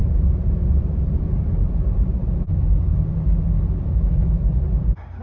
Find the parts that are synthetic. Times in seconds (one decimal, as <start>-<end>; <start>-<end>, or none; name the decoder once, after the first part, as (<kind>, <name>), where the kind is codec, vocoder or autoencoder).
0.0-3.1 (vocoder, BigVGAN v2)